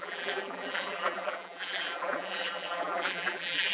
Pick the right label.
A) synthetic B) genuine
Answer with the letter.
A